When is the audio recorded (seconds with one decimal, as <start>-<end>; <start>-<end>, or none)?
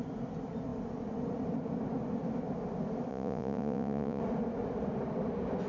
0.0-3.1; 4.2-5.7